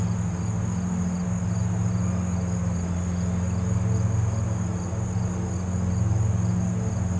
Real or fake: real